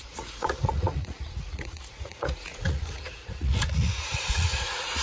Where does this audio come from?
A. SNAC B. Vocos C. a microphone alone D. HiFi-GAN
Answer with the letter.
B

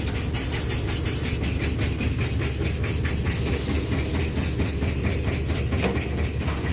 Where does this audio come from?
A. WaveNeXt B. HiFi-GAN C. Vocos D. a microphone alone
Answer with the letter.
D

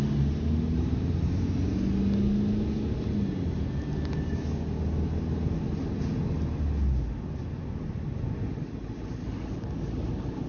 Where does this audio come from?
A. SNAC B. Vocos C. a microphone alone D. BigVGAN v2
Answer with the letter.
C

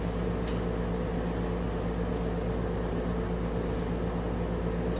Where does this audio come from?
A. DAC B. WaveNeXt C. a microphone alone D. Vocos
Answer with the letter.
C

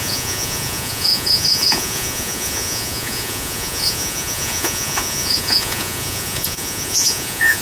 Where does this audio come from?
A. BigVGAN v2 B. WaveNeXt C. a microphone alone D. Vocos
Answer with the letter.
D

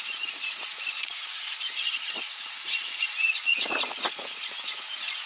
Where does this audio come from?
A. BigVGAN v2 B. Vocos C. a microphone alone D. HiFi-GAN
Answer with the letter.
B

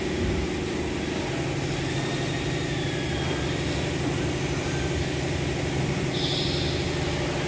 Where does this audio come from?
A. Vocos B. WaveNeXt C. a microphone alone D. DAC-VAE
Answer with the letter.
C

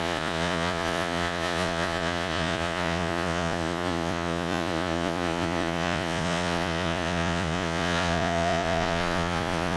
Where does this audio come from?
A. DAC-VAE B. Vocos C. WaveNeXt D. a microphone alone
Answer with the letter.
B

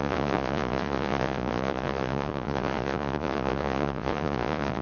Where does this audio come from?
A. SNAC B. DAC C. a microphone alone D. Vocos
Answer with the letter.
D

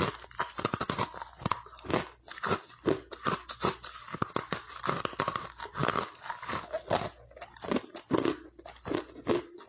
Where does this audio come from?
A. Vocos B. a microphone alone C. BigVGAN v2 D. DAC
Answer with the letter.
B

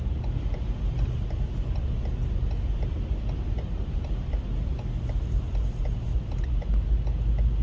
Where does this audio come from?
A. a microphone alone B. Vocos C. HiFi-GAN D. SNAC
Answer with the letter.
A